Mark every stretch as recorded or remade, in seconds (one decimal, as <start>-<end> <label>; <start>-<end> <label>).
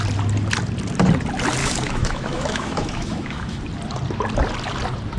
0.0-1.6 recorded; 1.6-3.6 remade; 3.6-5.2 recorded